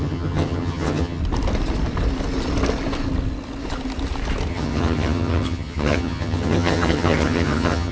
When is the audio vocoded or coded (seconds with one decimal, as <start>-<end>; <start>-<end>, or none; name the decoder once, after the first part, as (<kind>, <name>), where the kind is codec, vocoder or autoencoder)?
0.0-1.2 (vocoder, HiFi-GAN); 4.5-7.9